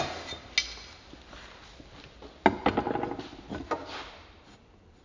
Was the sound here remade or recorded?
recorded